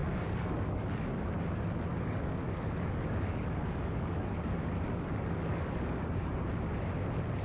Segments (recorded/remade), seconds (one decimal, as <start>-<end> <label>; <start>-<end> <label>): 0.0-1.2 remade; 1.2-1.9 recorded; 1.9-6.3 remade; 6.3-7.4 recorded